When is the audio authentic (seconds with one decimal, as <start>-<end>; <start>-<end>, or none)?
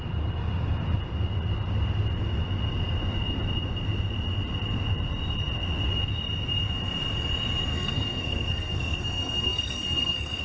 0.0-7.7